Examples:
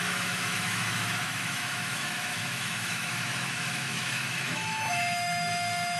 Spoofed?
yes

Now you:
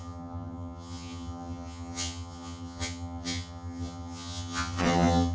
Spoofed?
yes